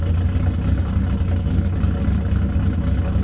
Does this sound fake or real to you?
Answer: real